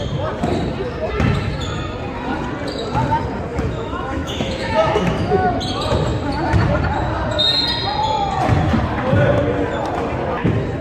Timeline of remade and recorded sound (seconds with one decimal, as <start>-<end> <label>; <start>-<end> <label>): 0.0-3.5 recorded; 3.5-5.3 remade; 5.3-10.8 recorded